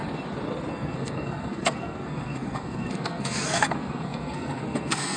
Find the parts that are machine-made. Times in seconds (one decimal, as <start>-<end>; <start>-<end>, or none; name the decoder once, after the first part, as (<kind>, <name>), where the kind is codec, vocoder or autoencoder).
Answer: 0.7-5.2 (codec, SNAC)